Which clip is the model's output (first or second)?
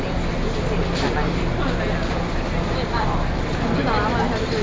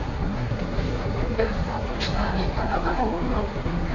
second